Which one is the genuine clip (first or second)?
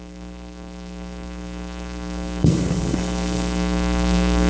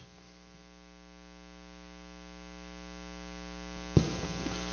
second